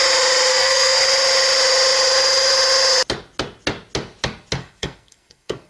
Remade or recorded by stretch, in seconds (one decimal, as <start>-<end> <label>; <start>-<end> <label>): 0.0-0.5 recorded; 0.5-1.0 remade; 1.0-4.6 recorded; 4.6-5.7 remade